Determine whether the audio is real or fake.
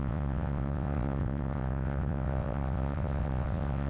fake